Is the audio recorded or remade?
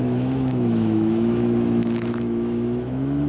remade